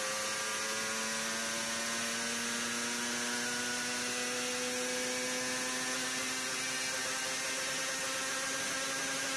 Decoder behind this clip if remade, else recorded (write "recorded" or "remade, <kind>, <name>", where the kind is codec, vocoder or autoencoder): recorded